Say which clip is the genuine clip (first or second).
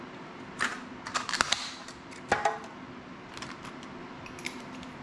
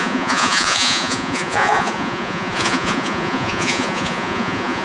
first